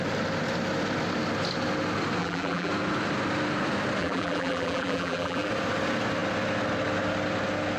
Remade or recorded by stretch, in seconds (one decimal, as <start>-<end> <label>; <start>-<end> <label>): 0.0-2.2 recorded; 2.2-2.7 remade; 2.7-4.0 recorded; 4.0-5.5 remade; 5.5-7.8 recorded